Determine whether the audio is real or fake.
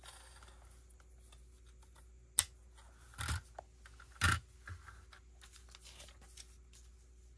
real